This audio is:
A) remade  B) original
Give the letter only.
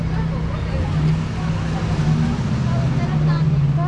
B